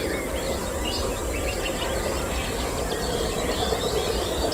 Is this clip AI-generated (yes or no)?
no